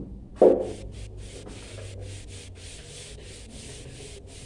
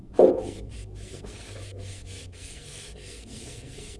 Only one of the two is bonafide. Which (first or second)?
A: first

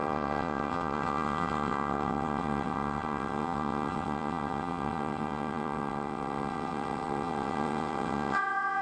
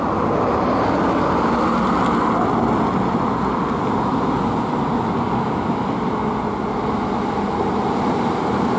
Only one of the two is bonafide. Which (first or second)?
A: second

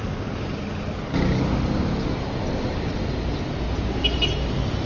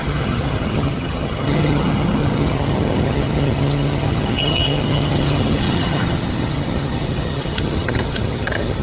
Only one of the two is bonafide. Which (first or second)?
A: first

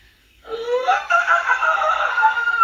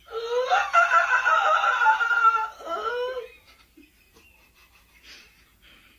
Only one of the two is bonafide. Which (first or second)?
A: second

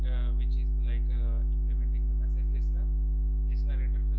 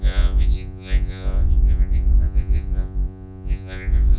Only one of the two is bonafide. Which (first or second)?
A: first